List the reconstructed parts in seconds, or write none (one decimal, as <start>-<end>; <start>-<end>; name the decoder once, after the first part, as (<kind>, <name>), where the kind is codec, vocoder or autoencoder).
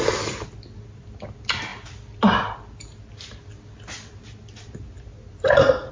none